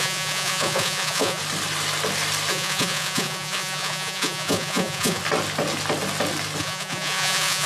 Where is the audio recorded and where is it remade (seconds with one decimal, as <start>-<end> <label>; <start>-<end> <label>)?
0.0-1.4 remade; 1.4-2.5 recorded; 2.5-5.2 remade; 5.2-6.6 recorded; 6.6-7.7 remade